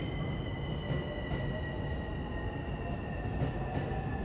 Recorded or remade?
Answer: recorded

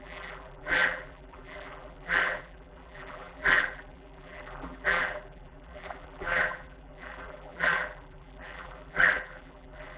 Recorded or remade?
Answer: remade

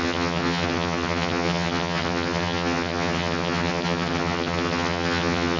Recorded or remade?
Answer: remade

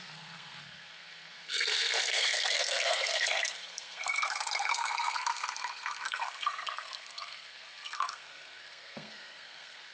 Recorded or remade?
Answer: remade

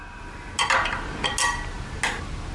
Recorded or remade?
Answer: recorded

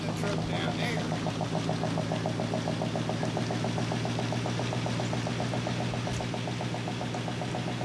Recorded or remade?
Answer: recorded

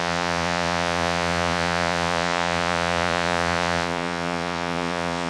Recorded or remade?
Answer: remade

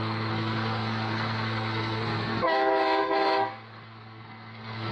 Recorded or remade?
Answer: remade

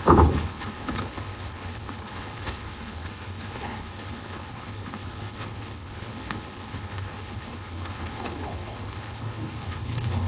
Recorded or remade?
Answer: remade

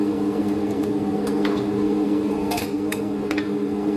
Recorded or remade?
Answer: remade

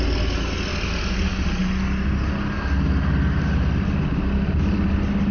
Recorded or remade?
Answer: recorded